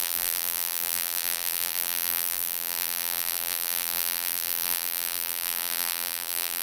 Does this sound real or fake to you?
fake